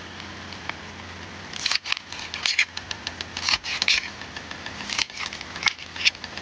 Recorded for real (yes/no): yes